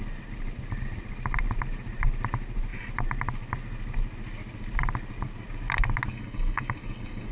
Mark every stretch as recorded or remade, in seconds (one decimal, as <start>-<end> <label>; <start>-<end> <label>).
0.0-6.1 recorded; 6.1-7.3 remade